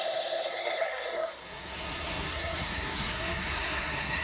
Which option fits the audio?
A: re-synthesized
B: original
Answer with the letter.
A